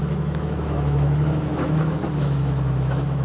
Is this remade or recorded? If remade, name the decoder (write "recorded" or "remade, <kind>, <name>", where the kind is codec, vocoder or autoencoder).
remade, autoencoder, DAC-VAE